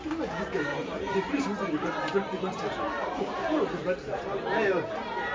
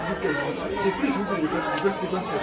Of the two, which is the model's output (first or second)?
first